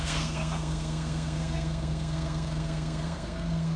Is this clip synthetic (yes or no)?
yes